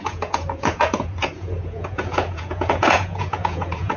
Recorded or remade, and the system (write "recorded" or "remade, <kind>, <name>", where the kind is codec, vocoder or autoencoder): remade, vocoder, Vocos